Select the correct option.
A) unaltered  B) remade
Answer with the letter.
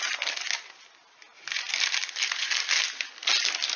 A